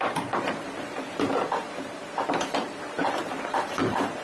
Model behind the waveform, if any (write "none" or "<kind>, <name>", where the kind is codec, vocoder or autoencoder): vocoder, BigVGAN v2